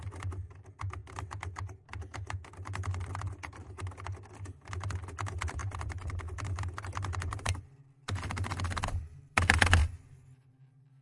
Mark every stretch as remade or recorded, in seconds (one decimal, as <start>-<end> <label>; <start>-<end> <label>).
0.0-5.6 recorded; 5.6-7.6 remade; 7.6-9.8 recorded; 9.8-10.5 remade; 10.5-11.0 recorded